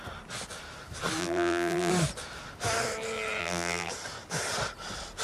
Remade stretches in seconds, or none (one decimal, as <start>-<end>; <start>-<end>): 1.2-1.9; 3.4-3.9